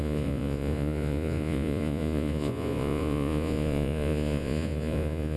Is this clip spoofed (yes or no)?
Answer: yes